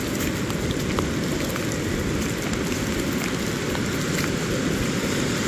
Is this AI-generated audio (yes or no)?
no